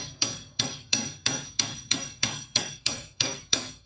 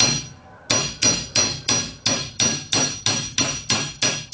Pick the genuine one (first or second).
second